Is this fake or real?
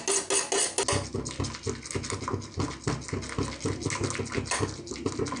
real